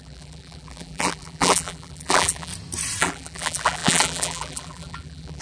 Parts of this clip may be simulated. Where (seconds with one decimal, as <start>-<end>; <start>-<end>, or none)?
0.0-2.5; 3.0-5.4